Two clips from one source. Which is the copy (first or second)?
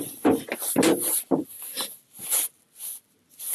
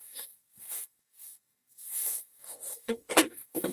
second